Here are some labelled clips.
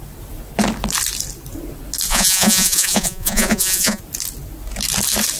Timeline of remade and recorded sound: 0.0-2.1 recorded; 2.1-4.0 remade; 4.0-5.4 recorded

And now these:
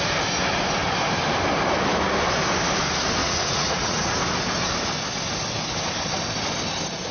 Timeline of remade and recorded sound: 0.0-3.2 recorded; 3.2-4.1 remade; 4.1-7.1 recorded

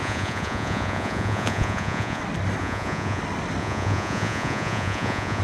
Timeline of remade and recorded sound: 0.0-2.2 remade; 2.2-2.6 recorded; 2.6-3.2 remade; 3.2-3.6 recorded; 3.6-5.4 remade

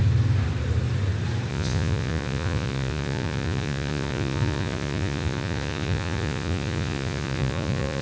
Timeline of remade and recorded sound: 0.0-1.5 recorded; 1.5-8.0 remade

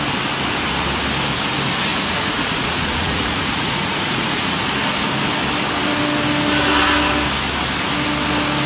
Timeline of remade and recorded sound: 0.0-1.9 recorded; 1.9-4.6 remade; 4.6-8.7 recorded

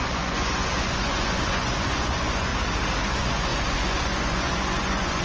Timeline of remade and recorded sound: 0.0-2.5 remade; 2.5-3.1 recorded; 3.1-5.2 remade

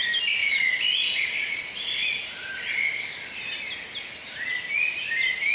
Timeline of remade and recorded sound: 0.0-0.4 recorded; 0.4-1.6 remade; 1.6-5.5 recorded

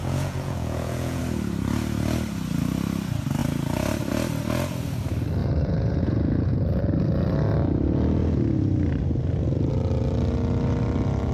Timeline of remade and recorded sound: 0.0-1.2 remade; 1.2-5.4 recorded; 5.4-6.8 remade; 6.8-11.3 recorded